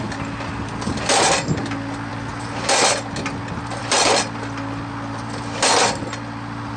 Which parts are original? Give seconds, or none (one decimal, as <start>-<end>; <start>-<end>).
0.0-6.8